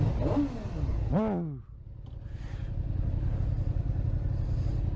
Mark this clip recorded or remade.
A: recorded